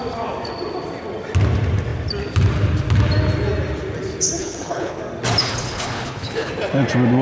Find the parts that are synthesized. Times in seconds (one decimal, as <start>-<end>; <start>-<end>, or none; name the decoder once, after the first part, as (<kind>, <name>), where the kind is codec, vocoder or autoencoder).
4.4-5.0 (codec, HILCodec); 5.4-6.5